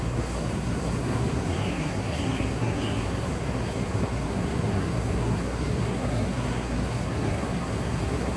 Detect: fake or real fake